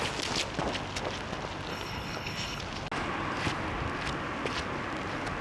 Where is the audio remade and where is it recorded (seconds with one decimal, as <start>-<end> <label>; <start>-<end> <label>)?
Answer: 0.0-1.7 recorded; 1.7-2.6 remade; 2.6-5.4 recorded